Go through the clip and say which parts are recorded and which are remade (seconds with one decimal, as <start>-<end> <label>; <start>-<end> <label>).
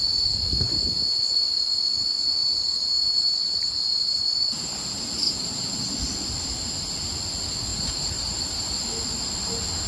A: 0.0-2.4 recorded; 2.4-5.7 remade; 5.7-7.7 recorded; 7.7-8.7 remade; 8.7-9.9 recorded